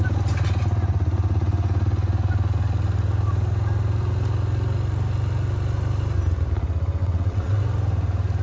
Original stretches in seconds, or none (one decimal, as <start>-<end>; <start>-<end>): 0.0-7.0; 7.6-8.4